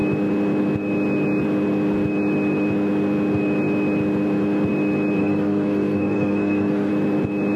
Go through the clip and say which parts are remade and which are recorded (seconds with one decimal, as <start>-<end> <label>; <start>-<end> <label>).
0.0-5.2 recorded; 5.2-6.9 remade; 6.9-7.6 recorded